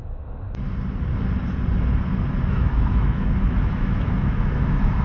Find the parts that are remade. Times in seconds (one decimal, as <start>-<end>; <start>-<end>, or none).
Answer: 2.5-5.0